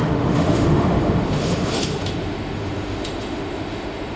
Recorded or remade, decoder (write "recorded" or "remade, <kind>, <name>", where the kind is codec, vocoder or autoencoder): remade, autoencoder, DAC-VAE